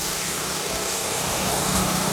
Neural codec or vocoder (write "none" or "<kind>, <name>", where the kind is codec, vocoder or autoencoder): codec, DAC